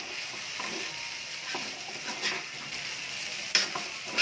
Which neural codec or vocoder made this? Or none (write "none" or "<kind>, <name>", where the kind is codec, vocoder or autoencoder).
none